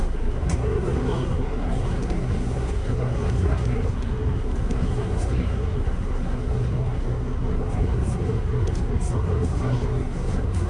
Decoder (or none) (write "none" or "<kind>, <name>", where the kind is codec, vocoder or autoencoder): codec, SNAC